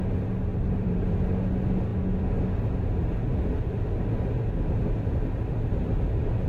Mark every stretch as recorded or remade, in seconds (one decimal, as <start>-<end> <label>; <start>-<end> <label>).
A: 0.0-0.5 recorded; 0.5-1.3 remade; 1.3-6.5 recorded